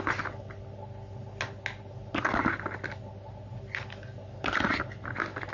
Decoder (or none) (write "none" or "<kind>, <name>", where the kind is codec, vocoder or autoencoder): none